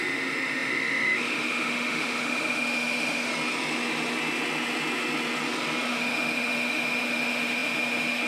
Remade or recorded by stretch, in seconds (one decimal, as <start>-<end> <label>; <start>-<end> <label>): 0.0-3.3 remade; 3.3-5.9 recorded; 5.9-8.3 remade